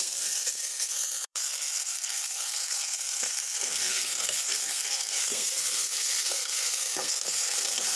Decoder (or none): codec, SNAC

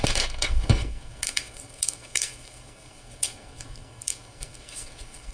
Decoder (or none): codec, SNAC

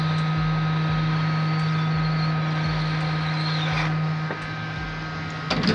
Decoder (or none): none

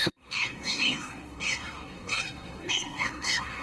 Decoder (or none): codec, SNAC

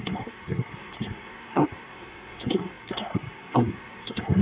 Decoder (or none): codec, SNAC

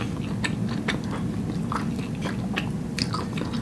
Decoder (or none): none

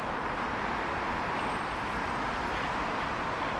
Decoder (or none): none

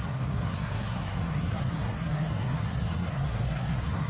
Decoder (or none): codec, SNAC